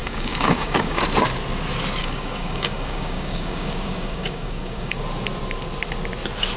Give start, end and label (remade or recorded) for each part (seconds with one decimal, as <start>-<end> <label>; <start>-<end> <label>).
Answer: 0.0-1.0 remade; 1.0-2.0 recorded; 2.0-5.0 remade; 5.0-6.6 recorded